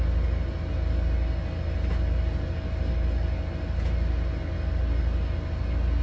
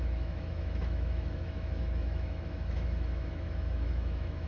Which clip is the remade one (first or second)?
second